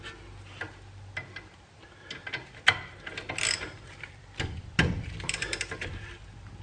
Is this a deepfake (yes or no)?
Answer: no